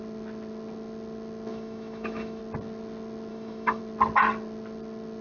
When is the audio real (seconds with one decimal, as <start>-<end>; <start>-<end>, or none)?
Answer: 0.0-1.5; 2.4-3.3; 3.8-5.2